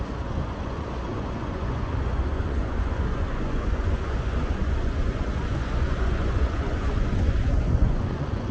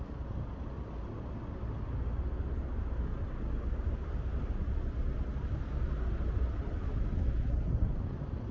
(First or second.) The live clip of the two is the second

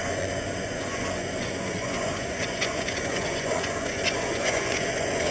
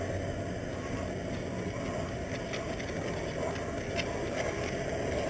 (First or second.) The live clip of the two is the second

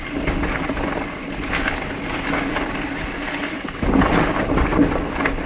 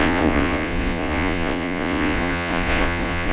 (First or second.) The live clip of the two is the first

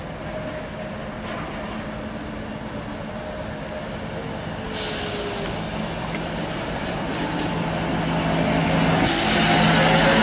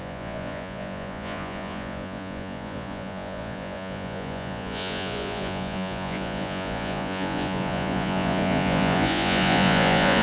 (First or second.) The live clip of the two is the first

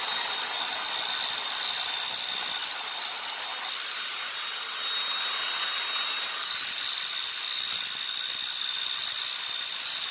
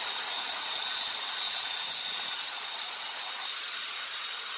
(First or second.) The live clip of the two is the first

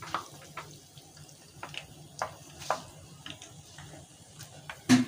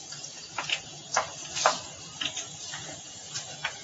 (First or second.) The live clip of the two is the first